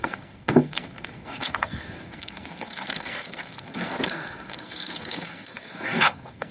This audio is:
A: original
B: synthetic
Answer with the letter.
B